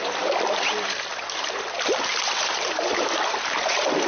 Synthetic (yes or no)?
yes